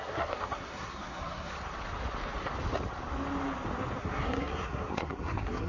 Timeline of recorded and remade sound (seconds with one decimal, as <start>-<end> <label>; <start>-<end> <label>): 0.0-1.5 remade; 1.5-4.0 recorded; 4.0-5.7 remade